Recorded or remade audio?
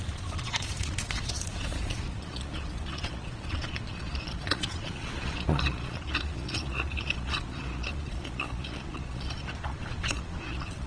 remade